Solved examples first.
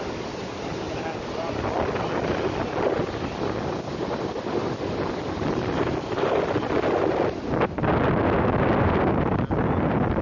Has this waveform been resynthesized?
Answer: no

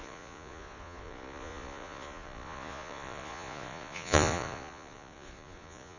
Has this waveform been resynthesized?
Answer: yes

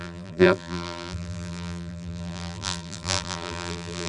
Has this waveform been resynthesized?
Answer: yes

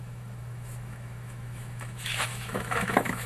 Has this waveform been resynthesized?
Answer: yes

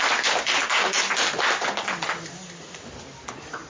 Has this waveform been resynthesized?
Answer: no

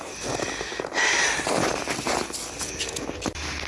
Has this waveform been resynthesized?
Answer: no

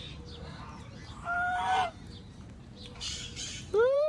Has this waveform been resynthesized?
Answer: yes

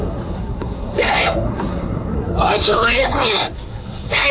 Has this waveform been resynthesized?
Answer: yes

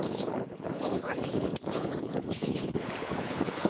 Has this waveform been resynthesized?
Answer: yes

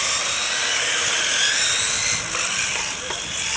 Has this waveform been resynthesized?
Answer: no